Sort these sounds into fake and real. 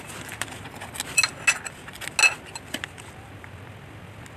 real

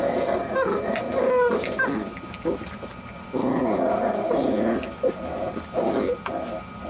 real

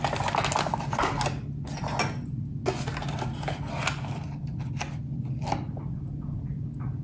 real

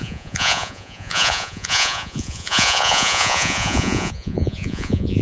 fake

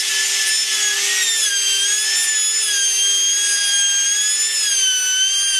real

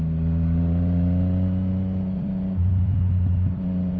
fake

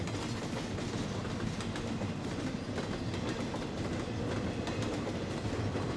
real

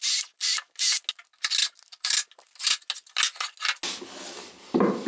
real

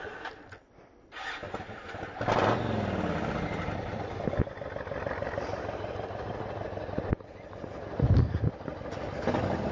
real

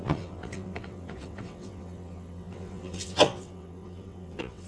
fake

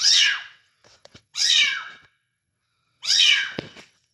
fake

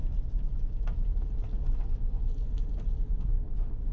real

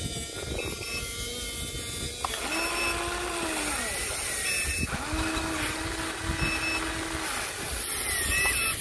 real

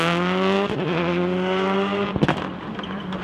real